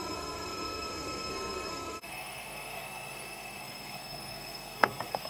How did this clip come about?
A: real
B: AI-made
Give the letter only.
B